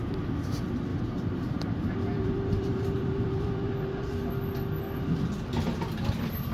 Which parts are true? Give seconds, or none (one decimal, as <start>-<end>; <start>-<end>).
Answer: 0.0-0.9; 4.3-6.5